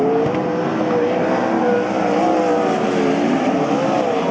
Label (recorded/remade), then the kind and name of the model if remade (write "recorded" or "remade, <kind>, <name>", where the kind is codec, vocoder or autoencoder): recorded